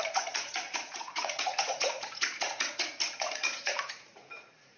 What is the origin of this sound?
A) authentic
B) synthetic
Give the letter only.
B